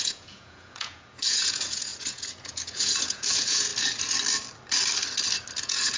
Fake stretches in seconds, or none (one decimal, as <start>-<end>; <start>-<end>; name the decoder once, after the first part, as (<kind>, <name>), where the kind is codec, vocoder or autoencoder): 0.0-3.7 (vocoder, Vocos); 5.6-6.0